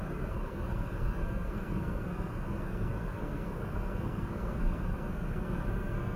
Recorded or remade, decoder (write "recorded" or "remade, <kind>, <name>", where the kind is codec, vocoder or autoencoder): remade, codec, SNAC